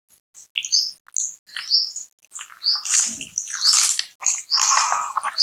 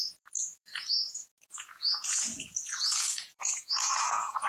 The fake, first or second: second